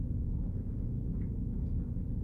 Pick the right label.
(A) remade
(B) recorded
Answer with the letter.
A